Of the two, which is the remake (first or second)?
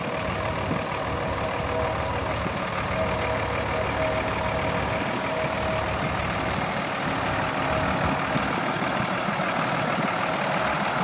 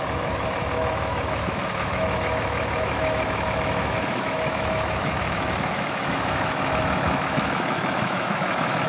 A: second